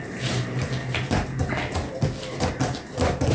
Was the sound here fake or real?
real